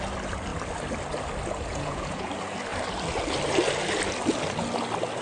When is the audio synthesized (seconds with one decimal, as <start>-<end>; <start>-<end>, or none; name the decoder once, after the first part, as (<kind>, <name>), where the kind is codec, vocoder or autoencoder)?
1.7-2.3 (vocoder, Vocos)